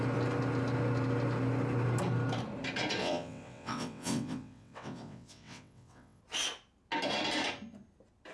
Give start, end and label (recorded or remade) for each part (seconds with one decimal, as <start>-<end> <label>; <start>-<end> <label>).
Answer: 0.0-3.0 recorded; 3.0-6.2 remade; 6.2-8.3 recorded